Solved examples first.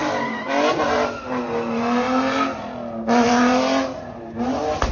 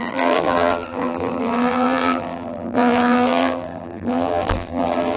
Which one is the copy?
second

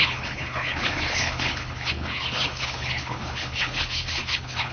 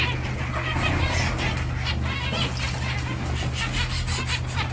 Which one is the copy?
first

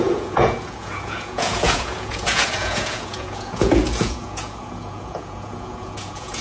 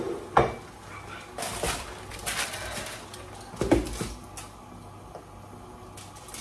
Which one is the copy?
first